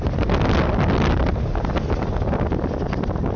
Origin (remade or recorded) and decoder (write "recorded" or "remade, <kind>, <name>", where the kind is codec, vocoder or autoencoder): recorded